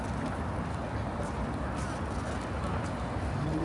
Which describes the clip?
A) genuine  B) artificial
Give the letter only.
A